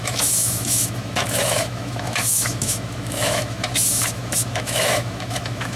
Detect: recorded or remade remade